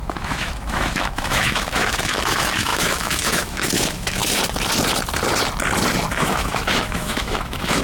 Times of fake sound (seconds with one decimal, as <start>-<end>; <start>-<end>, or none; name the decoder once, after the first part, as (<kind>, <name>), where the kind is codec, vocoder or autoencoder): 0.0-4.2 (autoencoder, DAC-VAE); 6.1-7.8